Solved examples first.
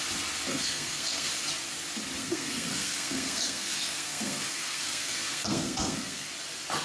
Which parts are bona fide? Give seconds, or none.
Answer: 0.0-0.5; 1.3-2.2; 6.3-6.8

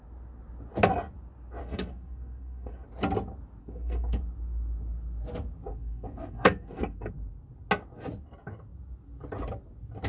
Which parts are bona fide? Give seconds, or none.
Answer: 0.0-1.6; 2.7-3.6; 4.2-5.7; 7.1-10.1